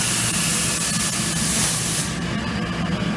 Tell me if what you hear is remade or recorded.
recorded